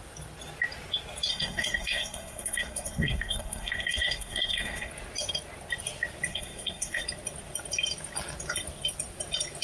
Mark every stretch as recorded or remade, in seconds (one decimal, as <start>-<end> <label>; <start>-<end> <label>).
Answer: 0.0-1.3 recorded; 1.3-4.9 remade; 4.9-6.3 recorded; 6.3-7.0 remade; 7.0-9.6 recorded